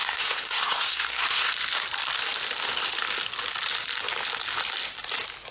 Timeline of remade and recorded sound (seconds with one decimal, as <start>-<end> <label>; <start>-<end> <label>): 0.0-1.5 remade; 1.5-5.5 recorded